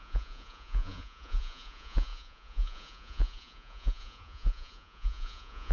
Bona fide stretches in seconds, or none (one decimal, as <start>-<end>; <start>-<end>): none